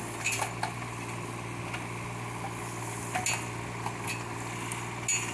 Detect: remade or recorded recorded